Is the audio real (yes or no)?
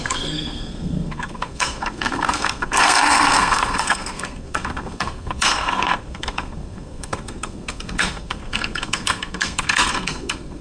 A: no